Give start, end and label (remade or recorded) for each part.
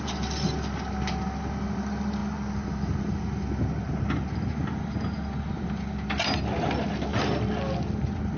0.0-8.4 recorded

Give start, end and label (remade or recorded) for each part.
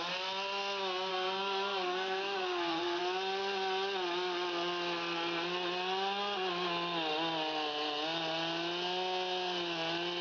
0.0-1.1 recorded; 1.1-3.0 remade; 3.0-10.2 recorded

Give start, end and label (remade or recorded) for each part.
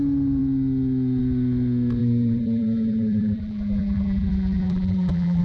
0.0-2.0 recorded; 2.0-5.4 remade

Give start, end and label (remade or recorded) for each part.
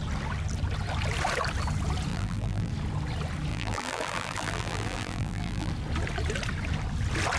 0.0-2.1 recorded; 2.1-2.7 remade; 2.7-3.5 recorded; 3.5-5.7 remade; 5.7-7.4 recorded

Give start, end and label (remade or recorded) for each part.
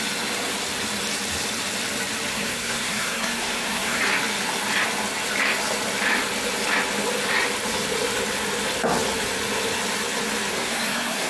0.0-2.3 recorded; 2.3-4.0 remade; 4.0-10.5 recorded; 10.5-11.3 remade